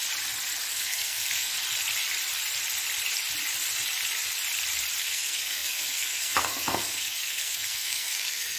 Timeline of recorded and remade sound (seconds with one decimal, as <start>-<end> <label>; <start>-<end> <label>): 0.0-0.7 recorded; 0.7-1.5 remade; 1.5-5.0 recorded; 5.0-8.6 remade